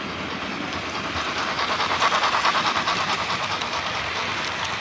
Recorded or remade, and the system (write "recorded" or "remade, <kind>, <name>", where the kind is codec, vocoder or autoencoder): remade, vocoder, BigVGAN v2